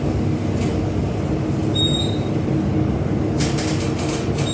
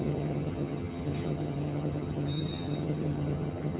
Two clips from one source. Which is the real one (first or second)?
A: first